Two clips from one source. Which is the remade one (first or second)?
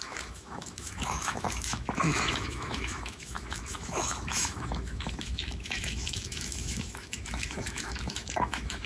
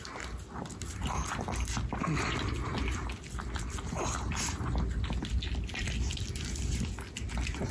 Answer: first